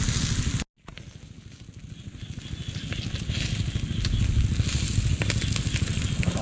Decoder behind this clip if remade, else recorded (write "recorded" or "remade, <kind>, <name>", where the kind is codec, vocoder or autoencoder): recorded